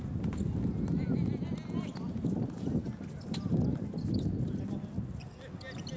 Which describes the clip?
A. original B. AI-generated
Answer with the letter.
A